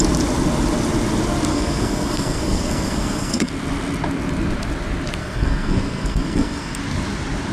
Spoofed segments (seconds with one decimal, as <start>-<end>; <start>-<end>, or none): 1.5-3.5; 5.2-6.8